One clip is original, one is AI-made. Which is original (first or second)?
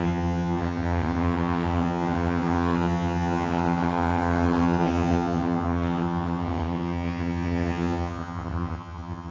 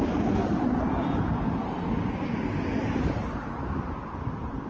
second